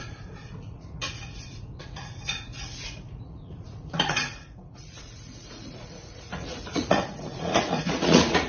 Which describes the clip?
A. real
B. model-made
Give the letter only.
B